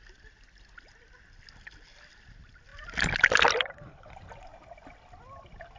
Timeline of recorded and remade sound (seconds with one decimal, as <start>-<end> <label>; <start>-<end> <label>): 0.0-5.8 recorded